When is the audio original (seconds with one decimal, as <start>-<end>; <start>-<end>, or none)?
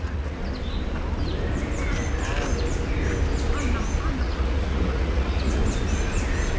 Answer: 0.4-4.2; 5.6-6.6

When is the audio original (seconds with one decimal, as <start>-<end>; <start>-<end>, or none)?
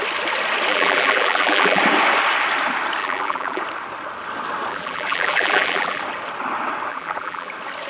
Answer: 0.0-0.7; 1.8-3.0; 3.6-4.7; 6.0-6.9; 7.5-7.9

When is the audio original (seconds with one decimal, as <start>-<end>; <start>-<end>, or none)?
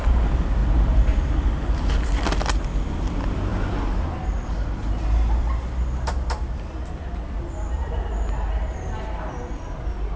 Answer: 0.0-0.6; 1.5-10.2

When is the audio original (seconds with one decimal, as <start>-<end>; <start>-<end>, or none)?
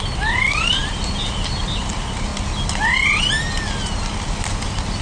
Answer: 0.0-5.0